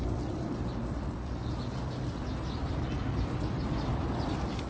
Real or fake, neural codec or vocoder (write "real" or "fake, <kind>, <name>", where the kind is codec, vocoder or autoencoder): real